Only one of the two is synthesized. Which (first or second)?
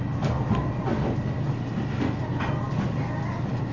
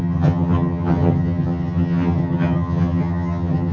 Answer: second